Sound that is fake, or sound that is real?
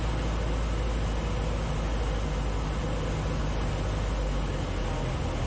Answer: real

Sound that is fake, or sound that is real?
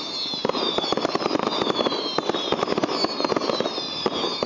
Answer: real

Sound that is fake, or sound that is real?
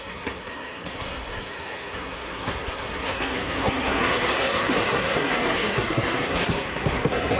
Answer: fake